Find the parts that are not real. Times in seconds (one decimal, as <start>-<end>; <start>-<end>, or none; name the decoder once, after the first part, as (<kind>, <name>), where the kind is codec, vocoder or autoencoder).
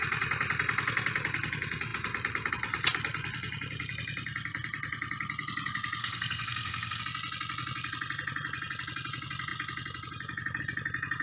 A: 6.0-7.0 (codec, SNAC)